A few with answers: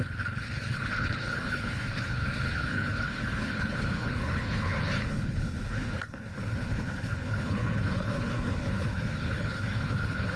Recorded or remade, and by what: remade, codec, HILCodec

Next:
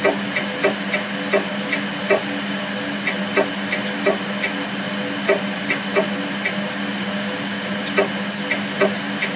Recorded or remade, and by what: recorded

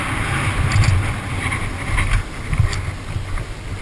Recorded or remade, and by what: recorded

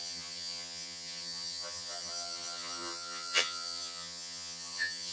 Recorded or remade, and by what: remade, vocoder, HiFi-GAN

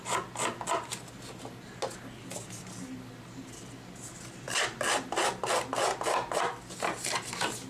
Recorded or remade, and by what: recorded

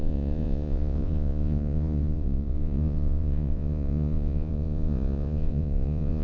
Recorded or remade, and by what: remade, vocoder, Vocos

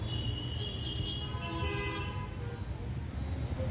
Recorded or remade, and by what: recorded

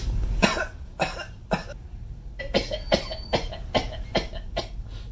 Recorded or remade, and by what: recorded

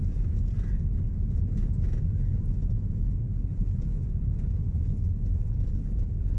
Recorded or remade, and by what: remade, vocoder, Vocos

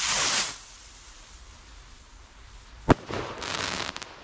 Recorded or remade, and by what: recorded